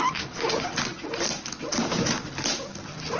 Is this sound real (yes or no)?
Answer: yes